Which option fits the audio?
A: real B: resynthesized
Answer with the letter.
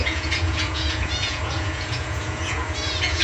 B